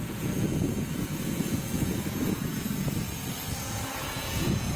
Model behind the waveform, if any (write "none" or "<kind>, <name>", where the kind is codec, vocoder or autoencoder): vocoder, Vocos